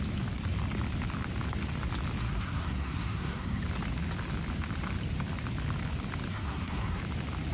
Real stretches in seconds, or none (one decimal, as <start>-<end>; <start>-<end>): 0.0-2.2; 3.6-6.3; 7.0-7.5